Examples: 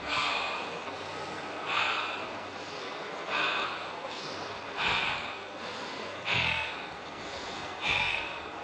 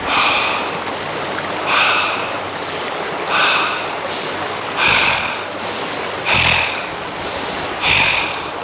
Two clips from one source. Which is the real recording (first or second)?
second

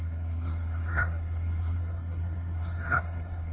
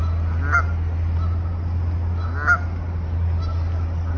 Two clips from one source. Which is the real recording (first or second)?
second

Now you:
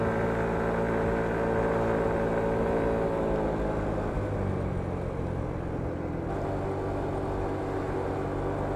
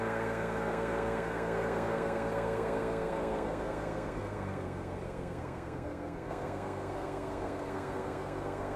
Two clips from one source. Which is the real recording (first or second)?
first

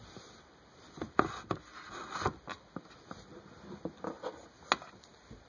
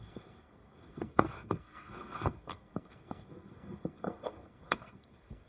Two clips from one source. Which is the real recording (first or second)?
first